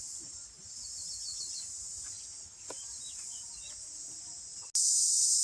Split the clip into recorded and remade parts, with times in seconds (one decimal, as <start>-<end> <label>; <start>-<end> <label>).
0.0-5.4 recorded